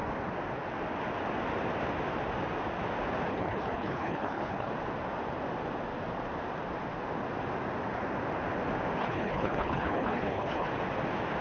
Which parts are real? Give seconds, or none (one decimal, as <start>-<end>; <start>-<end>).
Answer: 0.0-3.3; 4.7-9.0; 10.7-11.4